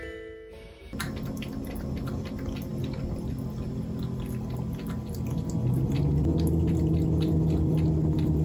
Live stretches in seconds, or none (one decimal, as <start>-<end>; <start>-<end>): 0.0-8.4